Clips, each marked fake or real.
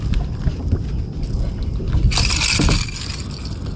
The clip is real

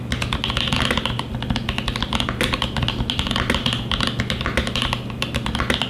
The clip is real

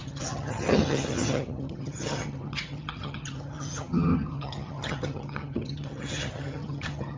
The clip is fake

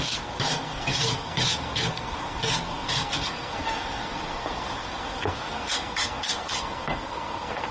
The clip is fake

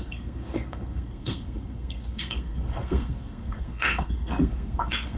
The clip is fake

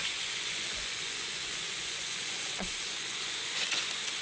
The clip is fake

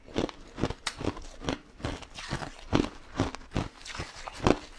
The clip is real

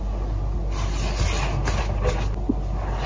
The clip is real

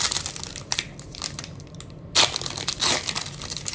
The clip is real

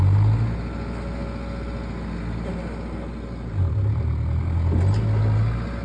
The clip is real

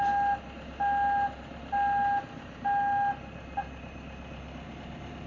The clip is real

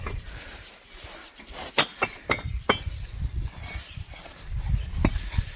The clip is real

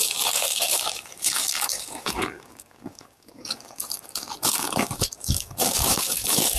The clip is fake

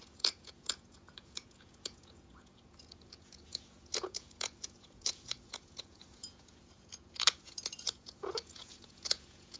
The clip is fake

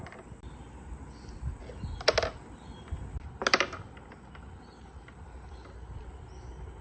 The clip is real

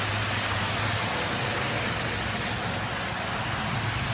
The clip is real